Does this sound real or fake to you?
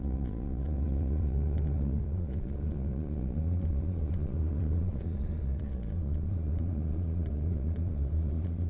fake